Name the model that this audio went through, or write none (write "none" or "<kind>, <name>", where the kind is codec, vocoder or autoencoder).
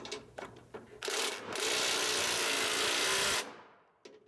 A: none